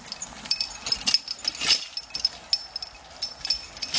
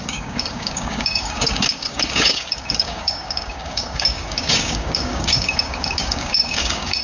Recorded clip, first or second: first